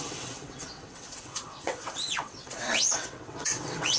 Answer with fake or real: fake